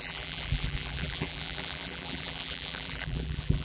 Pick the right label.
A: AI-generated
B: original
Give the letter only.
A